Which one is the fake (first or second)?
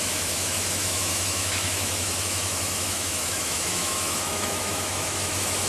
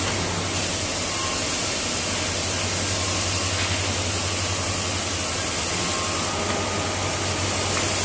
first